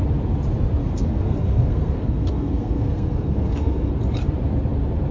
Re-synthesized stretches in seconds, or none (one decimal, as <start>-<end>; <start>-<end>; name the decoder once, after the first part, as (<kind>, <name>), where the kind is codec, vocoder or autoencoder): 0.8-3.9 (codec, SNAC)